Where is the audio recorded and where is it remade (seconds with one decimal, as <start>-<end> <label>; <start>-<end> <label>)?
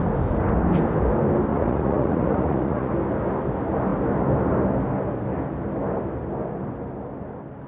0.0-1.5 recorded; 1.5-2.9 remade; 2.9-7.7 recorded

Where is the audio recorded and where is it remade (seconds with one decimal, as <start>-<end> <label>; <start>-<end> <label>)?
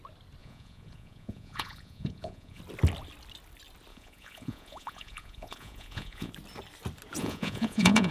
0.0-0.4 recorded; 0.4-2.6 remade; 2.6-3.9 recorded; 3.9-6.3 remade; 6.3-7.2 recorded; 7.2-8.1 remade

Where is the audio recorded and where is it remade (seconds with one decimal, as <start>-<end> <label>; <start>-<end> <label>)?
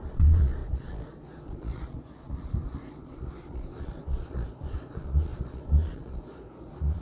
0.0-7.0 remade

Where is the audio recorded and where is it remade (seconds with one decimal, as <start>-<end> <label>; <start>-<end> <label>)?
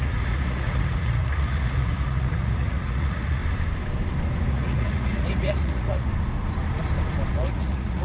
0.0-3.4 remade; 3.4-4.5 recorded; 4.5-6.1 remade; 6.1-7.3 recorded; 7.3-8.0 remade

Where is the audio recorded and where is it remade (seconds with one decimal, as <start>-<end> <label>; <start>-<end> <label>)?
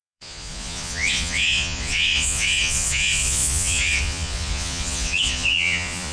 0.0-6.1 remade